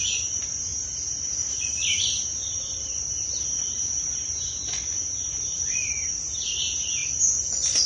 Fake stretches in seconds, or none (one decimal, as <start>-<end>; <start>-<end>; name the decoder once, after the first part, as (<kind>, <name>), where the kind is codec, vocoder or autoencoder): 0.0-7.0 (vocoder, BigVGAN v2)